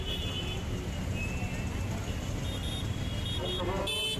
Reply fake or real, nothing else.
real